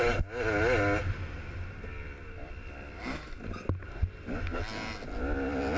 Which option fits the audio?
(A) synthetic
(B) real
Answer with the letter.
B